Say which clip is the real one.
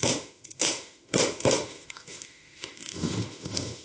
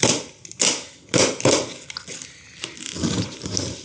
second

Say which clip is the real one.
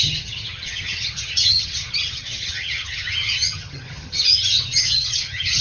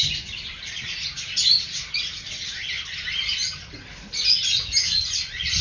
second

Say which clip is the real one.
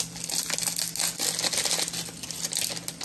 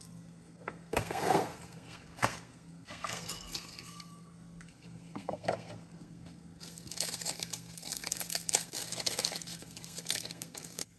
first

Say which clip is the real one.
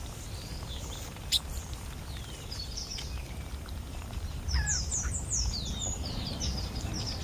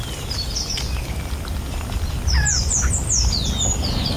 second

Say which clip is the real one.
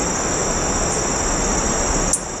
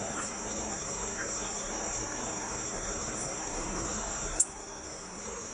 first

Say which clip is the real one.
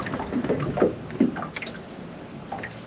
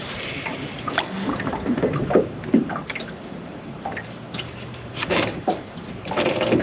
first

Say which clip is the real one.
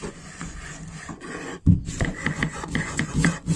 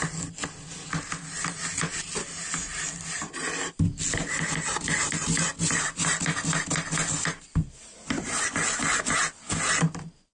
second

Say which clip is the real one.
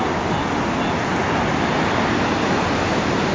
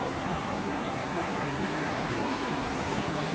first